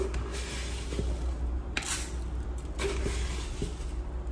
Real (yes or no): yes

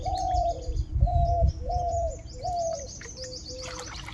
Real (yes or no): no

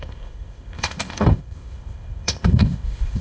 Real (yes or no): no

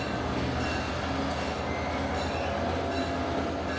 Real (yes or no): yes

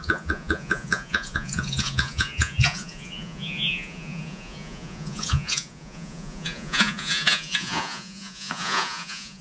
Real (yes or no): no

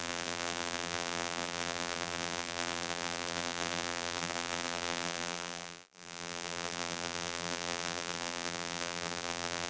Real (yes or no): no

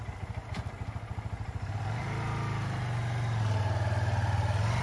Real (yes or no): yes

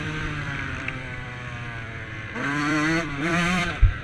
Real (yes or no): no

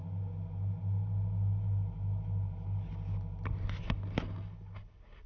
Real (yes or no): yes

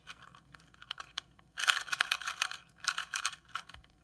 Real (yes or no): no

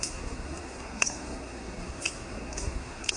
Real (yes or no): no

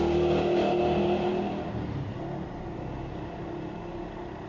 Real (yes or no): yes